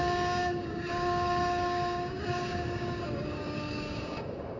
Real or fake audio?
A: fake